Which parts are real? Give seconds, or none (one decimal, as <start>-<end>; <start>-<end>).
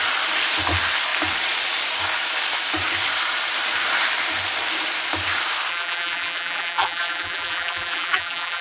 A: 0.0-5.7